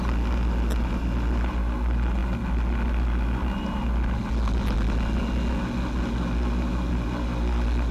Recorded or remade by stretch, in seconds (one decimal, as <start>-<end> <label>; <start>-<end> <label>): 0.0-7.9 recorded